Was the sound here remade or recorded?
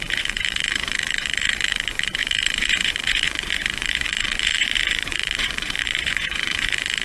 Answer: remade